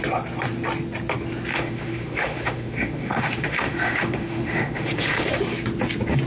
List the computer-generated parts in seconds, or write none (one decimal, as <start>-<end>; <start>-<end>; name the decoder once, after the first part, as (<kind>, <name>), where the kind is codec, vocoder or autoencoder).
1.5-5.3 (autoencoder, DAC-VAE)